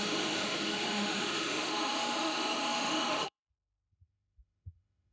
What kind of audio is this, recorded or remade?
remade